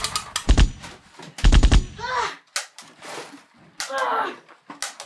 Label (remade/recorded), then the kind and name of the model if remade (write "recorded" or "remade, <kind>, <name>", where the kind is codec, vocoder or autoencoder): recorded